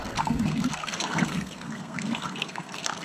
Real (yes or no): no